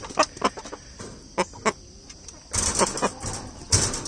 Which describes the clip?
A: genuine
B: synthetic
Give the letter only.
A